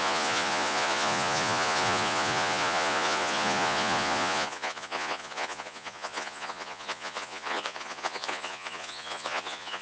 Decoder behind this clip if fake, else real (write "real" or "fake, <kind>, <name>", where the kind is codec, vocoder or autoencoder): fake, vocoder, Vocos